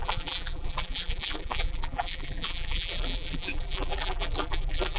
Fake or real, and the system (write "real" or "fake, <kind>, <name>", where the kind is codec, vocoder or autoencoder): fake, vocoder, BigVGAN v2